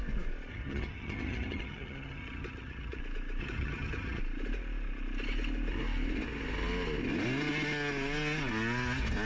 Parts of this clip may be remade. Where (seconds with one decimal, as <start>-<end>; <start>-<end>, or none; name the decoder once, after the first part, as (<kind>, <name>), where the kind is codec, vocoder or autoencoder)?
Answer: 0.5-3.0 (vocoder, HiFi-GAN); 3.4-4.2